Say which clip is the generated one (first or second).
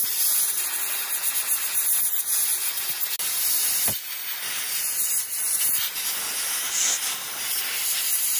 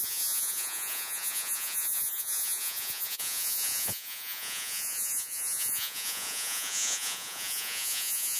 second